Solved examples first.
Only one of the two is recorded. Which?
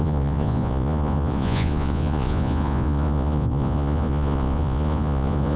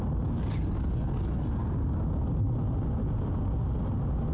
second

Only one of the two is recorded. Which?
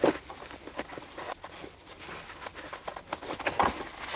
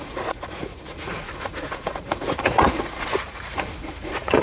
first